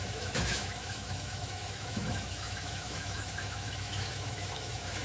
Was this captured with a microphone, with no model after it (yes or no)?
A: no